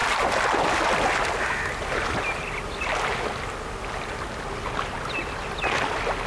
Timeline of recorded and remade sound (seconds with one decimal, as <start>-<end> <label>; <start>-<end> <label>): 0.0-6.3 recorded